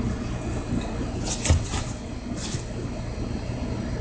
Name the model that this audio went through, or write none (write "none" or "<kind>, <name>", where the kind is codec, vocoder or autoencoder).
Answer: none